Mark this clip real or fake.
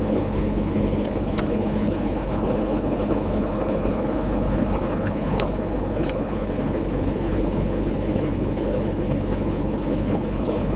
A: fake